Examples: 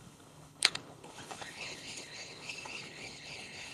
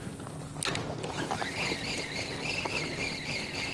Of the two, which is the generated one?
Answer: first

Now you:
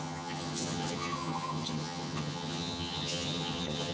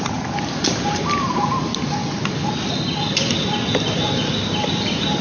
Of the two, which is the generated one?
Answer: first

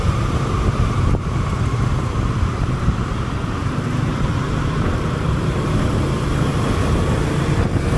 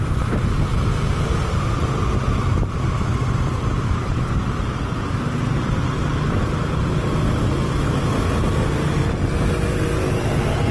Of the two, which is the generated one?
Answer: first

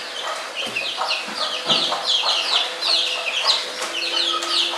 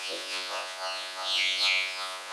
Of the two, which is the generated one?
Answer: second